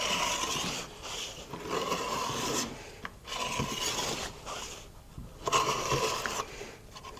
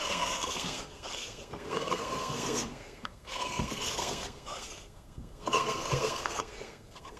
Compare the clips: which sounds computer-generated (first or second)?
second